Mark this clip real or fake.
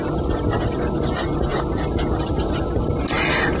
real